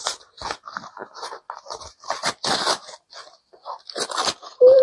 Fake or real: fake